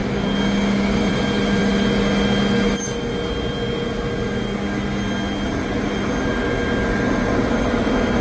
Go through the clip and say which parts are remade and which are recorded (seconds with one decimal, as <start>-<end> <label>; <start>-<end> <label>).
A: 0.0-1.0 recorded; 1.0-1.6 remade; 1.6-5.5 recorded; 5.5-6.3 remade; 6.3-6.8 recorded; 6.8-8.2 remade